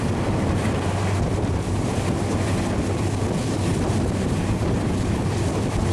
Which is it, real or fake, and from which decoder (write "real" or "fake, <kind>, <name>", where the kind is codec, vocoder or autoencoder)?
fake, vocoder, BigVGAN v2